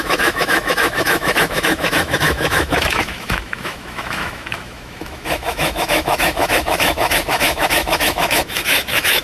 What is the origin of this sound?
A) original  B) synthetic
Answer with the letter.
B